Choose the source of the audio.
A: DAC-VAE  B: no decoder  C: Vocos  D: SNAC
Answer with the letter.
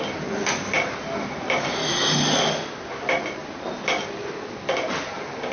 B